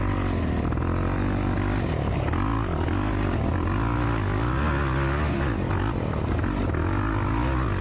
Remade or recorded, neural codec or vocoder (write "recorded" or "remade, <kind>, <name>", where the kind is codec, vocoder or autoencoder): recorded